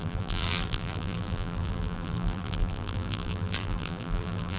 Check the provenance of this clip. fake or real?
fake